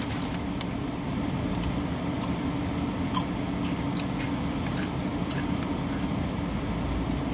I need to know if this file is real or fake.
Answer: real